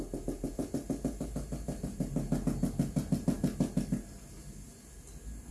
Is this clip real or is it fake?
real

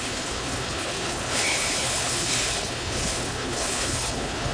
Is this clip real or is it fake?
fake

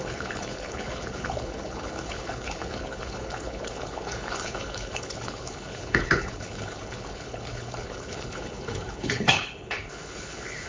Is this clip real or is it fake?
fake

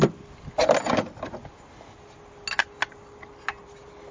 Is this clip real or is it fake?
real